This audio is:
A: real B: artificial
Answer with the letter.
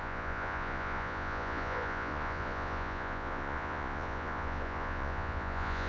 B